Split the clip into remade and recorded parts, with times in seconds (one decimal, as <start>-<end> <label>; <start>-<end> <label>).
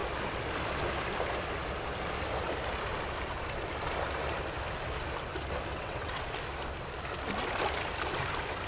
0.0-5.7 recorded; 5.7-6.2 remade; 6.2-8.7 recorded